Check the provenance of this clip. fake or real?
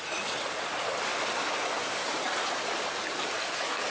real